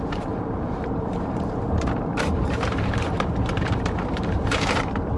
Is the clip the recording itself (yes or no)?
no